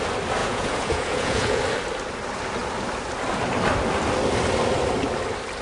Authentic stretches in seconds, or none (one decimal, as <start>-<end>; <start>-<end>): 0.0-0.4; 1.6-5.6